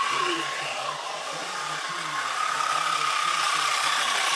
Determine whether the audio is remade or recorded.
remade